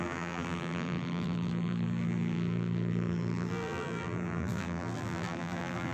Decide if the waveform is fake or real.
fake